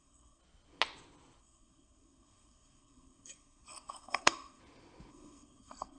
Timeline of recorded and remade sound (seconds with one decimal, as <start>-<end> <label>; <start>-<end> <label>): 0.0-0.4 remade; 0.4-1.4 recorded; 1.4-4.6 remade; 4.6-5.1 recorded; 5.1-6.0 remade